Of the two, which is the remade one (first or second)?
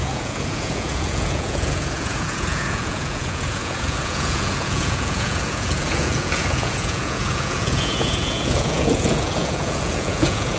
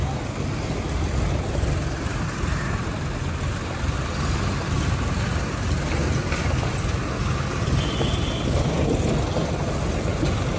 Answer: first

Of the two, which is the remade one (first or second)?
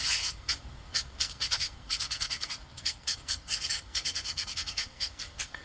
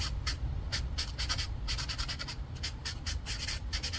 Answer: first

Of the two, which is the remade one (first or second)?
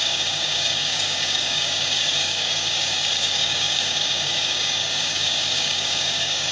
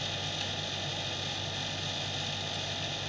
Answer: first